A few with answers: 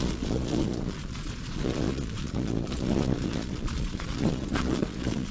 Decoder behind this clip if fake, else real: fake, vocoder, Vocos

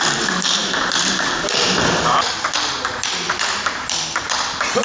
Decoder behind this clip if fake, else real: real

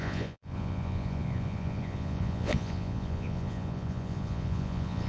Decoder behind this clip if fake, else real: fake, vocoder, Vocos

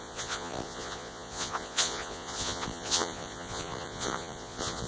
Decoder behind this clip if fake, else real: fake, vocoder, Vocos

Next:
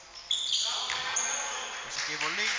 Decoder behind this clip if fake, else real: real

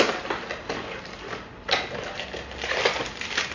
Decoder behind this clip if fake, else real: real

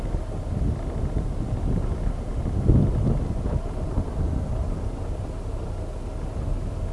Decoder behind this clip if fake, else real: real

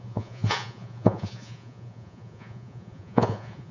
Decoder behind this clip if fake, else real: fake, vocoder, Vocos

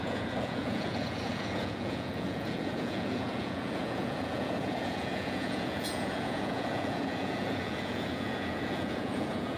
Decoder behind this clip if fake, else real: fake, vocoder, Vocos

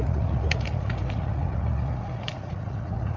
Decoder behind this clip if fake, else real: fake, vocoder, Vocos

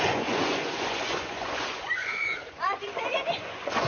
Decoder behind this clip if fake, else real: fake, vocoder, Vocos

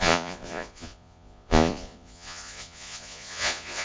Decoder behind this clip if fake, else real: fake, vocoder, Vocos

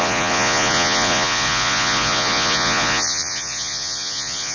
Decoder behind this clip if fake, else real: fake, vocoder, Vocos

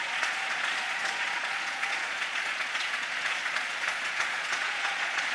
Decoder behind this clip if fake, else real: fake, vocoder, Vocos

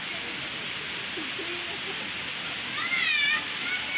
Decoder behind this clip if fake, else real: real